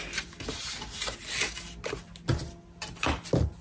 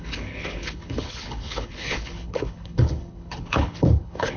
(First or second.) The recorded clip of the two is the first